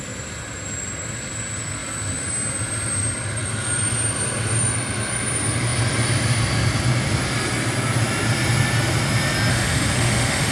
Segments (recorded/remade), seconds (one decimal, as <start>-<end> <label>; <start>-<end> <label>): 0.0-9.5 recorded; 9.5-10.5 remade